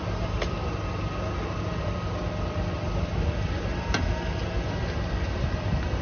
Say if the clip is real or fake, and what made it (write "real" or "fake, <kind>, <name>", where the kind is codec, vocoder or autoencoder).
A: real